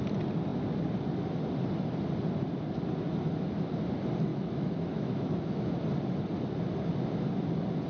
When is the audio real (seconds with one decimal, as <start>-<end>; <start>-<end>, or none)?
0.0-4.3; 5.7-7.9